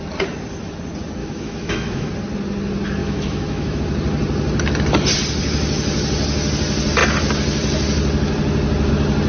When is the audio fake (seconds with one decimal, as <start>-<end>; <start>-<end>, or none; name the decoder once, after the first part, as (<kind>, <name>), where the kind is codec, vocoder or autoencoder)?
1.2-2.1 (autoencoder, DAC-VAE); 3.0-3.8